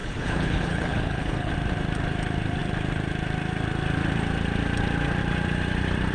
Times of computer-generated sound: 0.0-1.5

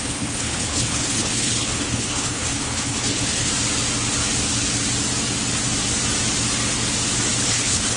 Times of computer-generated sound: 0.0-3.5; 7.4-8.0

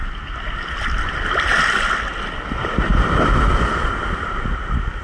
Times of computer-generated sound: none